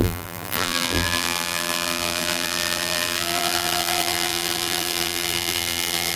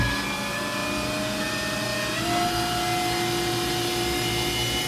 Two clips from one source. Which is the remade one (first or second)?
first